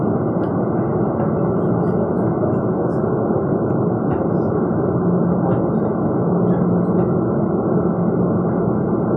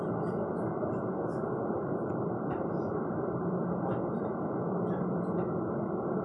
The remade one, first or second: second